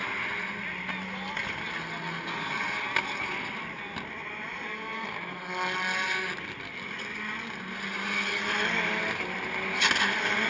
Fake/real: real